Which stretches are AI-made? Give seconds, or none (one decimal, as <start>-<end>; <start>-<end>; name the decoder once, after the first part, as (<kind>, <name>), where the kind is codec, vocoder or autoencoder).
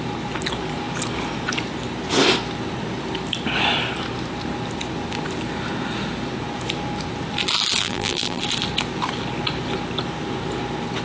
7.8-8.4 (vocoder, BigVGAN v2)